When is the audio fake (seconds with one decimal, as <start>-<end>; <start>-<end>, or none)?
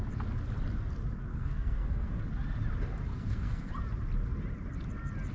1.3-2.2; 3.1-3.7